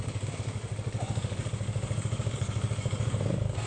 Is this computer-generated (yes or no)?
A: yes